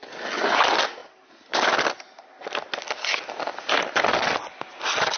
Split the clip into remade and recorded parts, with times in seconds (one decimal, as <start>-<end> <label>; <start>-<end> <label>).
0.0-5.2 recorded